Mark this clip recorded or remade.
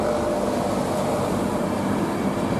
recorded